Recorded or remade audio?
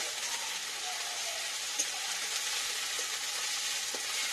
recorded